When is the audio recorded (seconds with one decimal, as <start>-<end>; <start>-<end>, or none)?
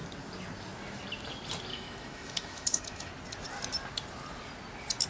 0.0-1.7; 3.1-5.1